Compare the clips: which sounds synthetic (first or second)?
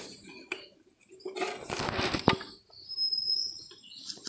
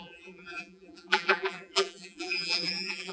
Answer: second